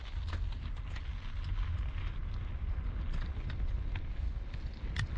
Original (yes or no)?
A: yes